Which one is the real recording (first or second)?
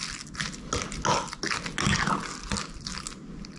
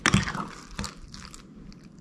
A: first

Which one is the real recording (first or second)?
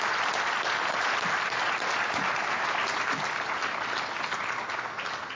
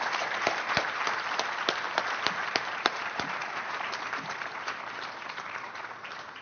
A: first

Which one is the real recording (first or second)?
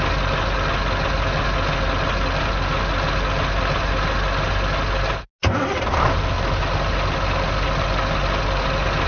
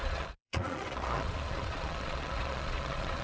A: first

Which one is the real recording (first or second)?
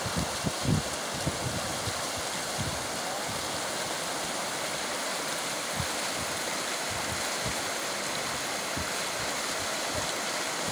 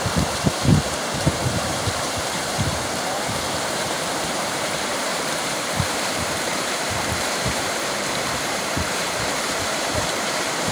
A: first